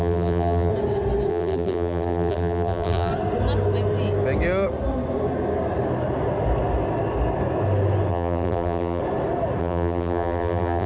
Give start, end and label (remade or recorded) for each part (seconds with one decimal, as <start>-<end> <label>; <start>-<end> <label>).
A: 0.0-0.7 remade; 0.7-1.3 recorded; 1.3-3.1 remade; 3.1-8.1 recorded; 8.1-9.0 remade; 9.0-9.6 recorded; 9.6-10.9 remade